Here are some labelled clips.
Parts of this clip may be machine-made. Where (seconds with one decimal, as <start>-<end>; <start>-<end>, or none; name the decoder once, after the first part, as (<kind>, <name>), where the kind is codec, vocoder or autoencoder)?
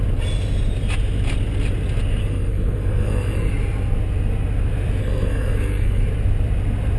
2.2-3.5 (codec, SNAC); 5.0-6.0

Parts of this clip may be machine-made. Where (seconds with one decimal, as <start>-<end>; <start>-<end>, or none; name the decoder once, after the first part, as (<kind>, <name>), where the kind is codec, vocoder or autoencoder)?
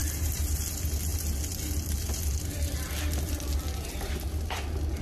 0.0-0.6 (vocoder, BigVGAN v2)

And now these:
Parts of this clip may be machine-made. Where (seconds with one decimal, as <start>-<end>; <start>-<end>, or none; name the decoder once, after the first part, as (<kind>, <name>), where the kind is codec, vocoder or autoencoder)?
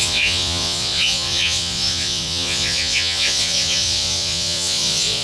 0.0-5.2 (vocoder, Vocos)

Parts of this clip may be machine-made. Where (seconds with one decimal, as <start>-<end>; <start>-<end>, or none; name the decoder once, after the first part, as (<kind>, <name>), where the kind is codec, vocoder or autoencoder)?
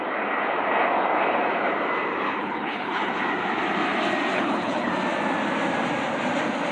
2.4-3.1 (codec, HILCodec); 4.3-4.9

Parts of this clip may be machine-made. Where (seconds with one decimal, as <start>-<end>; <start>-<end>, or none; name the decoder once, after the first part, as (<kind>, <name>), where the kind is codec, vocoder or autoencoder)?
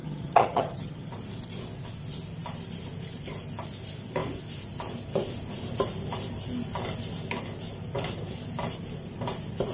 0.0-1.1 (vocoder, HiFi-GAN)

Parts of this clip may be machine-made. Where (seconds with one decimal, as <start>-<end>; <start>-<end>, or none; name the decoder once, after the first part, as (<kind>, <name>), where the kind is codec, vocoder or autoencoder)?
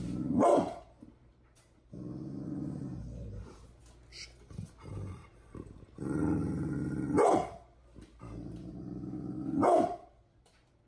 0.0-3.8 (vocoder, BigVGAN v2); 4.9-7.8; 8.5-10.9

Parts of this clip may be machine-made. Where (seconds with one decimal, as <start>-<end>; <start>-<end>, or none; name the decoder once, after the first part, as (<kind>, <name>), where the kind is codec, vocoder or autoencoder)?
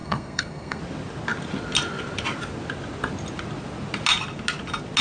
0.0-0.8 (codec, SNAC)